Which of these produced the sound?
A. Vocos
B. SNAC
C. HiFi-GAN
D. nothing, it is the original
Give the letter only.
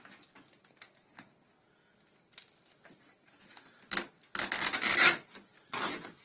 D